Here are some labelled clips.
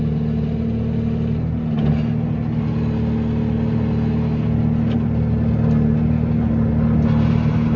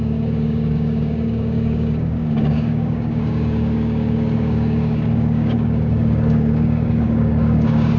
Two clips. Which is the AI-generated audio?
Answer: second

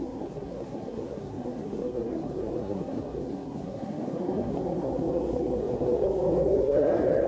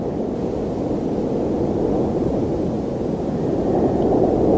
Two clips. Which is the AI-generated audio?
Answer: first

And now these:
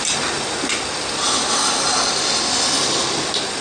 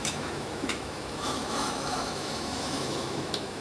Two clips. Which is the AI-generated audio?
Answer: second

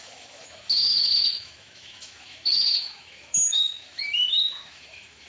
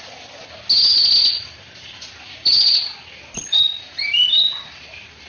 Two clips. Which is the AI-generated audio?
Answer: first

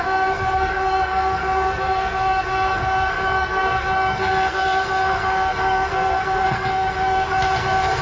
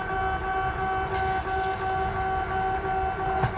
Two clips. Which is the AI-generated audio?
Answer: first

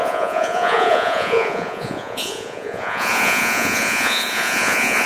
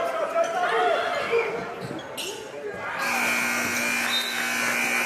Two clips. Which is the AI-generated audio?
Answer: first